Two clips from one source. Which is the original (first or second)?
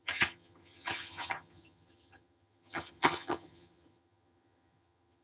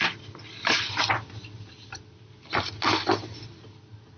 second